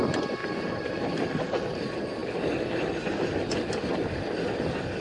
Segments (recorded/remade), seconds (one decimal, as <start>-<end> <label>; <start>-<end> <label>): 0.0-0.4 recorded; 0.4-1.6 remade; 1.6-5.0 recorded